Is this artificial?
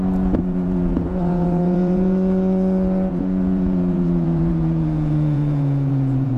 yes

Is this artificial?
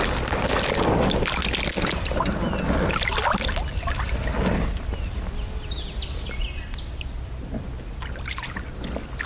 no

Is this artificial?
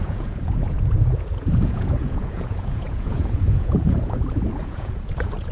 yes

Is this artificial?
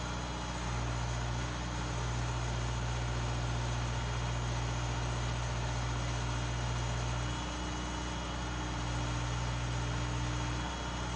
no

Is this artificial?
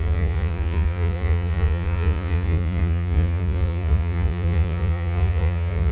yes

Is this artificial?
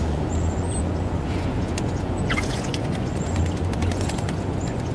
yes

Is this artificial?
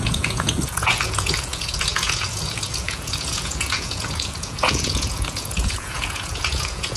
yes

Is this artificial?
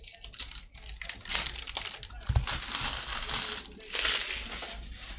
no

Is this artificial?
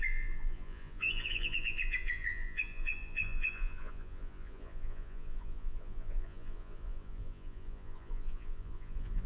yes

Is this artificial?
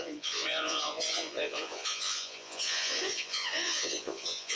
yes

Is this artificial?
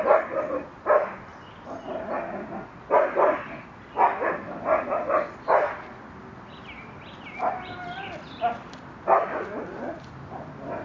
no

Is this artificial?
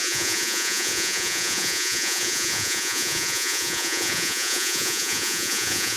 yes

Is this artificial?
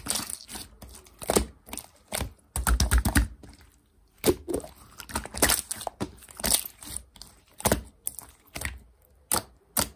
no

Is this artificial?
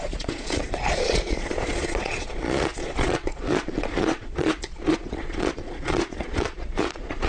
yes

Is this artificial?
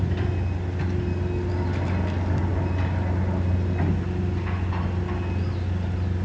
no